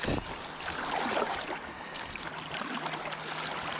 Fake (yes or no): no